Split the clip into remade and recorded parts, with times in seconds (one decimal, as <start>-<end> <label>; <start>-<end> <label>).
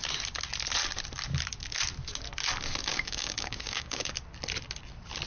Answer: 0.0-2.9 recorded; 2.9-4.1 remade; 4.1-5.3 recorded